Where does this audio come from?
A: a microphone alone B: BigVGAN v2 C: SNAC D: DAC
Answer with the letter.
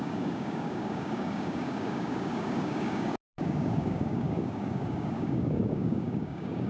D